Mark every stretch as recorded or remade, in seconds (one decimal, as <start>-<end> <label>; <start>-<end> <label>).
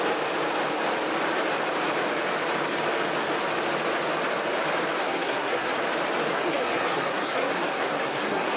0.0-5.0 recorded; 5.0-5.7 remade; 5.7-6.3 recorded; 6.3-8.6 remade